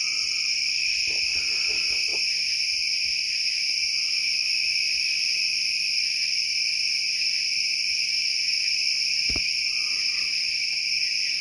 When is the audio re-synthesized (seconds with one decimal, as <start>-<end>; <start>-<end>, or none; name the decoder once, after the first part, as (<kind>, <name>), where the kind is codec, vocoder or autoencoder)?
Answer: 0.0-11.4 (vocoder, BigVGAN v2)